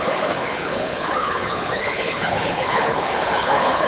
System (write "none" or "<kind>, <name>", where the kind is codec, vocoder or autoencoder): codec, HILCodec